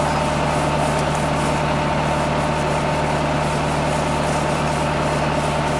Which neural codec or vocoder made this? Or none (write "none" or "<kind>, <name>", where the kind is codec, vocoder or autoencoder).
none